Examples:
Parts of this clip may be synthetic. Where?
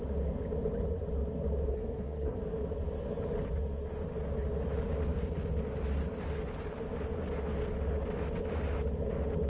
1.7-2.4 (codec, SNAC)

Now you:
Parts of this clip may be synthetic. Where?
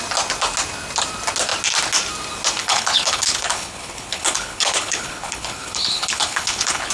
2.6-6.9 (codec, HILCodec)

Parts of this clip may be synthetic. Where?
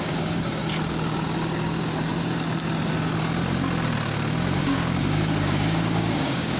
0.0-0.6 (codec, DAC); 4.6-6.6